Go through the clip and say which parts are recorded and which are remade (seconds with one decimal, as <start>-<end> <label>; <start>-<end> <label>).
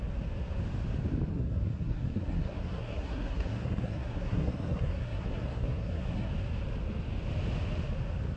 0.0-1.3 recorded; 1.3-6.3 remade; 6.3-8.4 recorded